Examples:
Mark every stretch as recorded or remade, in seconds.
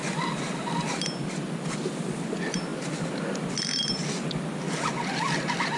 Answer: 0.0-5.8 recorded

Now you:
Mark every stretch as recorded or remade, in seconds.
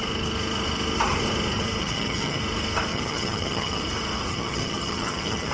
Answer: 0.0-1.8 recorded; 1.8-2.4 remade; 2.4-2.9 recorded; 2.9-3.8 remade; 3.8-4.3 recorded; 4.3-5.5 remade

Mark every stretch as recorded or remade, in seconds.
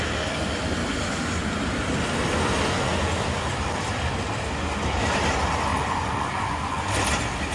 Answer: 0.0-5.7 recorded; 5.7-6.8 remade; 6.8-7.5 recorded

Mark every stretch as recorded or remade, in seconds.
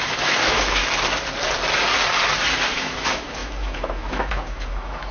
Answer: 0.0-0.8 remade; 0.8-2.8 recorded; 2.8-5.1 remade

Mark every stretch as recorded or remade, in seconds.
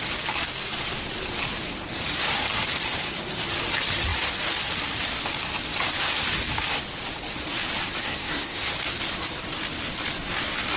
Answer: 0.0-8.0 recorded; 8.0-8.7 remade; 8.7-10.8 recorded